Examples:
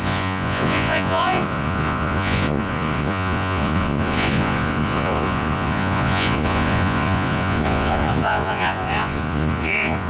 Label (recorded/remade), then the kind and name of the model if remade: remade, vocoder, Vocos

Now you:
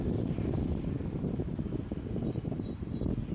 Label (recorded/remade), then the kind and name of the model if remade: remade, vocoder, BigVGAN v2